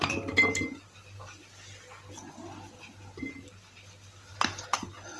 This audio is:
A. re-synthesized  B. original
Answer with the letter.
B